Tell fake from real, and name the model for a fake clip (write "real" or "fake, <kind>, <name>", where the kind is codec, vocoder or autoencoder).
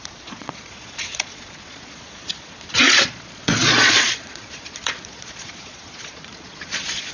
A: fake, vocoder, Vocos